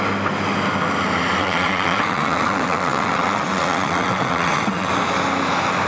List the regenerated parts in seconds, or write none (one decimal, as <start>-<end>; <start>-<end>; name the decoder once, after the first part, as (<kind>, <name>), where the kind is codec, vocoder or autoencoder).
1.4-4.9 (vocoder, WaveNeXt)